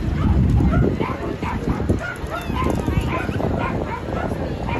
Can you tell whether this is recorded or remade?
recorded